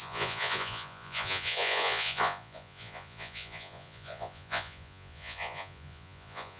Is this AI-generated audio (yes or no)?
yes